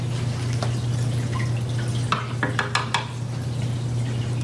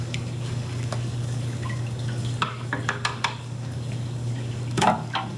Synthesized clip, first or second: second